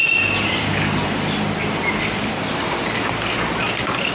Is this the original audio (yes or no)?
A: yes